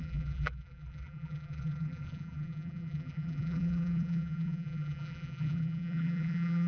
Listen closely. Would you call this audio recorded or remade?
remade